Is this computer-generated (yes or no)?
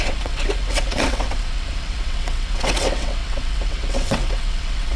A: yes